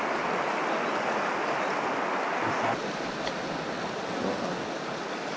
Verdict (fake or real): real